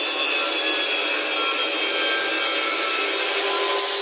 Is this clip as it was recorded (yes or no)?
yes